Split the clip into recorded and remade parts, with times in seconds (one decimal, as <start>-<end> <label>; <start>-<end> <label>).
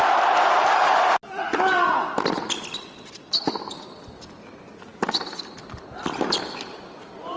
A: 0.0-7.4 recorded